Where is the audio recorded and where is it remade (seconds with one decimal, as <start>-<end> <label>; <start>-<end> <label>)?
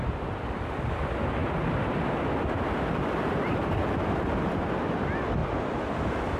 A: 0.0-6.4 recorded